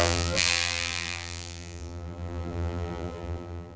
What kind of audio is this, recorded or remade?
remade